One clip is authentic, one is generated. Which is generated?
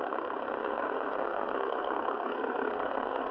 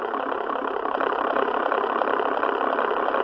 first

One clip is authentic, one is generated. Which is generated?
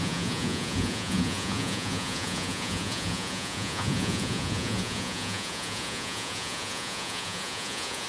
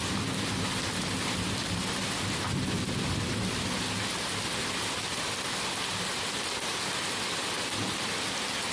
first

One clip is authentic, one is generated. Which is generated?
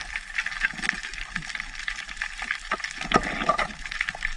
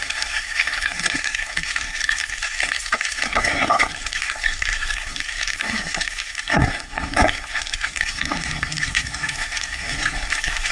second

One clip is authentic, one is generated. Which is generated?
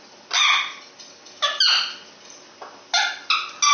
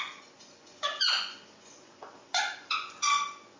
second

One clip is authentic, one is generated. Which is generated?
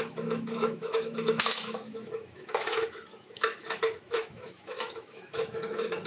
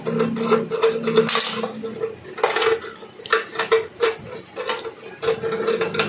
first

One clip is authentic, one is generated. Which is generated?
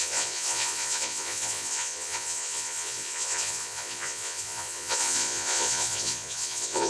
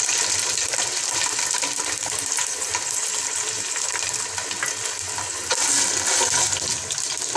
first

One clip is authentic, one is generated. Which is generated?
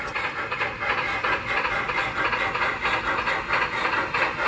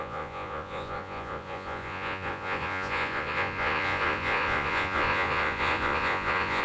second